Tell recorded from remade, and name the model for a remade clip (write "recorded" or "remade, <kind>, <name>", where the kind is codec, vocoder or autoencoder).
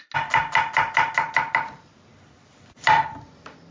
recorded